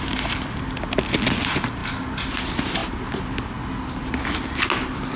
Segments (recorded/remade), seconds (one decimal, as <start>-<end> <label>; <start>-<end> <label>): 0.0-5.2 recorded